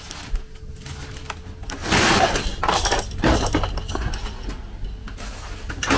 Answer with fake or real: real